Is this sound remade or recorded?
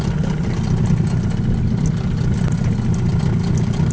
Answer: recorded